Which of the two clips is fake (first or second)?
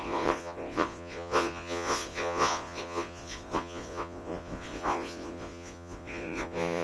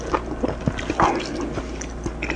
first